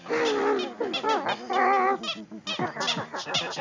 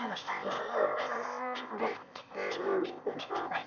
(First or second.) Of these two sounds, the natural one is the first